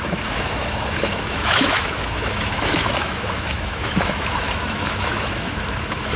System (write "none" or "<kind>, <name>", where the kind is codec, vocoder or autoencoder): autoencoder, DAC-VAE